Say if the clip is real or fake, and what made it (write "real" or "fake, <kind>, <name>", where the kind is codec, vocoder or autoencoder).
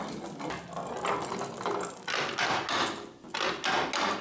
real